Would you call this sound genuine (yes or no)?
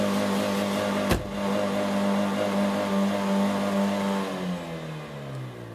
yes